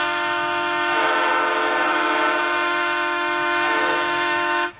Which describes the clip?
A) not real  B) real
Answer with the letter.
A